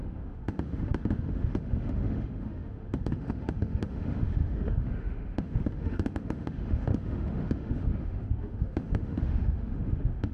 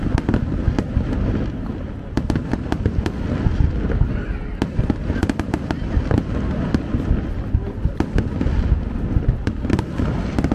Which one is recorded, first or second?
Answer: second